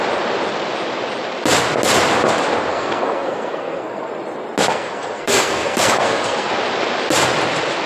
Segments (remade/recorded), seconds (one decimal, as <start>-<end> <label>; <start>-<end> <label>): 0.0-2.7 recorded; 2.7-4.1 remade; 4.1-4.7 recorded; 4.7-6.5 remade; 6.5-7.9 recorded